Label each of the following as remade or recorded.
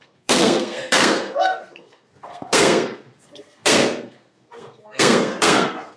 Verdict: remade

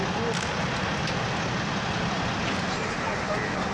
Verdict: recorded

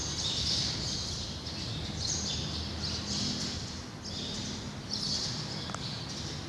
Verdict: recorded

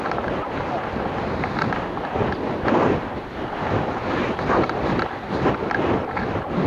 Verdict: recorded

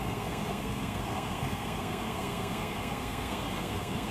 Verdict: remade